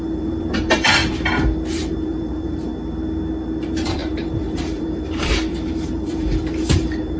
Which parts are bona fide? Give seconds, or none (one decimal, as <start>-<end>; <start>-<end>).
1.0-1.7; 2.7-3.6